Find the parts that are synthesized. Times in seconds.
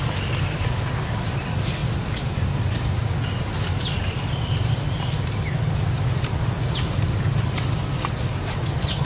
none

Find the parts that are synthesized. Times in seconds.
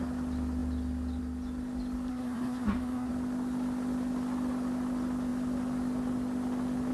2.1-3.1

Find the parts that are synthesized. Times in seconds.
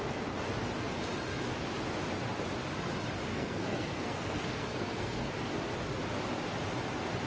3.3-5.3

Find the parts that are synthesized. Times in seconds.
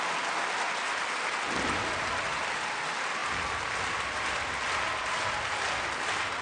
none